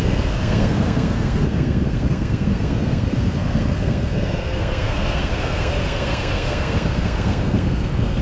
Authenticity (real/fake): fake